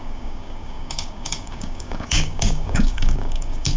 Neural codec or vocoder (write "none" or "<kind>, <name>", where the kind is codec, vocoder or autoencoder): codec, DAC